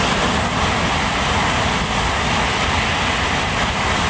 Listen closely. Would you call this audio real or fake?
real